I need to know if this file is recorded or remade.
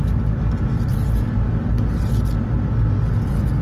recorded